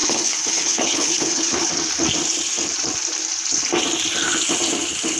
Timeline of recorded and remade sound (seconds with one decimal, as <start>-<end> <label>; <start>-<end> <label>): 0.0-1.7 remade; 1.7-5.2 recorded